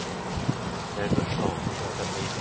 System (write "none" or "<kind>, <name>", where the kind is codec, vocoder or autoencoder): none